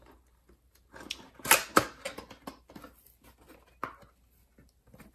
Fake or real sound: real